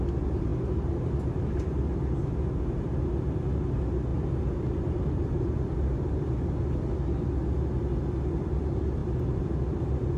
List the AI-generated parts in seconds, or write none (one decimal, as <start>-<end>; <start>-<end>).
4.1-6.9